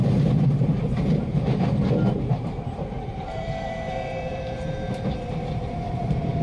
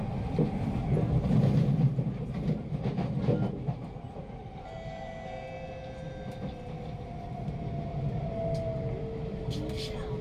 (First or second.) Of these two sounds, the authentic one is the second